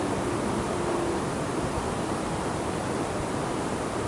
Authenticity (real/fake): real